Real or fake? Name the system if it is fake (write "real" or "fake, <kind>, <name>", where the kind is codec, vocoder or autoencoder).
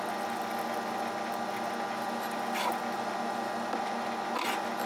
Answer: real